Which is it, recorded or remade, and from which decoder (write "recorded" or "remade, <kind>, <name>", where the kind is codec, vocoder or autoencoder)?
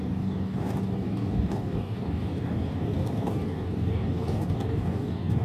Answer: remade, codec, DAC